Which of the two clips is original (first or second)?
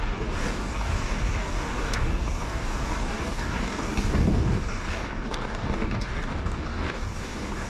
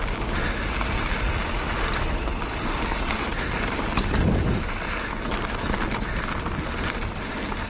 second